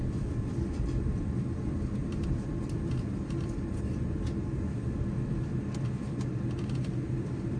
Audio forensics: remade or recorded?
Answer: remade